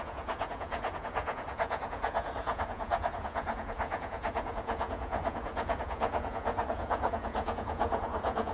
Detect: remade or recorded remade